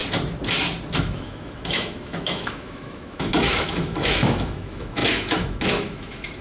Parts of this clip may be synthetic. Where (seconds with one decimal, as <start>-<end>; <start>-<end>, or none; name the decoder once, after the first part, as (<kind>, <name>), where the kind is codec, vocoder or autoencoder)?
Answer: 1.0-6.4 (autoencoder, DAC-VAE)